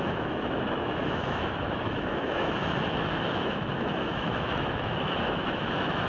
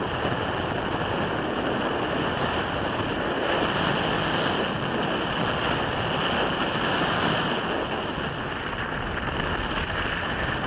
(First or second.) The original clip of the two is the second